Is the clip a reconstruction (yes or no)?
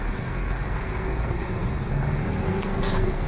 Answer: yes